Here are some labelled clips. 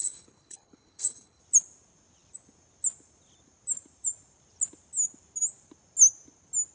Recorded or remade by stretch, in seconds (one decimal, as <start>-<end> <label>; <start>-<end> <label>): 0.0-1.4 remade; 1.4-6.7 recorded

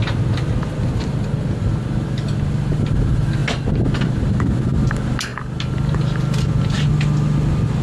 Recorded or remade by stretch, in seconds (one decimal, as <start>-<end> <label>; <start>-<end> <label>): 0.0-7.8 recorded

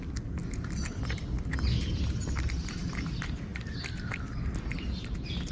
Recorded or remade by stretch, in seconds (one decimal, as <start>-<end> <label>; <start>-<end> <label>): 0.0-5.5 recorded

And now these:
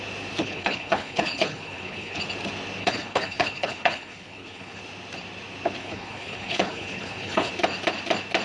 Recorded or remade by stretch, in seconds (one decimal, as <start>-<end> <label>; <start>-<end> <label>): 0.0-0.4 recorded; 0.4-2.2 remade; 2.2-2.8 recorded; 2.8-4.8 remade; 4.8-5.8 recorded; 5.8-7.5 remade; 7.5-8.4 recorded

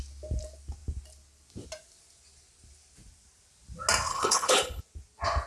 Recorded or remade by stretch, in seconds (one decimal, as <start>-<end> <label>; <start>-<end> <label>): 0.0-4.1 recorded; 4.1-4.8 remade; 4.8-5.5 recorded

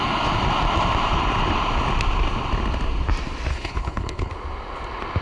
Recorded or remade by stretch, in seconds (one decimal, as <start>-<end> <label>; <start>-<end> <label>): 0.0-3.5 recorded; 3.5-4.3 remade; 4.3-5.2 recorded